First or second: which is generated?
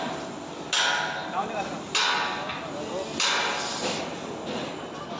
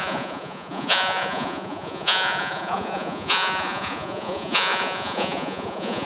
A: second